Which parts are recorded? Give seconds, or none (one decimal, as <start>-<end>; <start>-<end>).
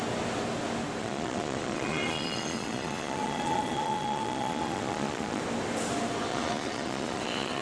0.0-1.0; 5.4-6.3